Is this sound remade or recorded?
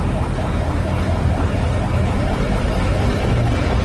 recorded